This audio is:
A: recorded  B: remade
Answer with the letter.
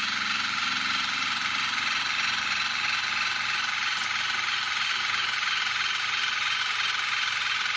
A